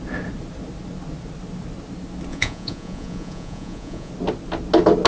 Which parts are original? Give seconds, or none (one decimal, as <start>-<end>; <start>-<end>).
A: 0.0-2.3; 4.1-5.1